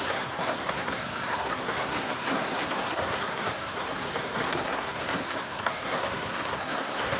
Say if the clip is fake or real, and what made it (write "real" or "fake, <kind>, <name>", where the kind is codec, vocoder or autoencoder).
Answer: fake, codec, SNAC